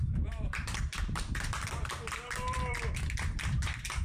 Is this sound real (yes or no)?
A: no